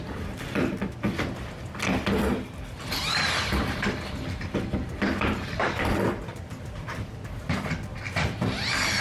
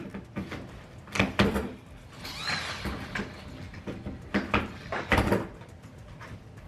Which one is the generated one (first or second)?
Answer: first